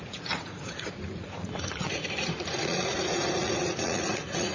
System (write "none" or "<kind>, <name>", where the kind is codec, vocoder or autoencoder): vocoder, Vocos